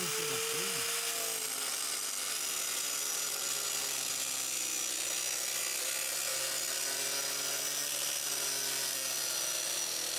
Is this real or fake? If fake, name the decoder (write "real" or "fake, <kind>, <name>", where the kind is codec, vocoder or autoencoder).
real